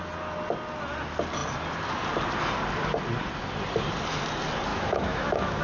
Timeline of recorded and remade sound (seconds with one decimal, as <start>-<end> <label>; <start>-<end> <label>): 0.0-4.7 recorded; 4.7-5.6 remade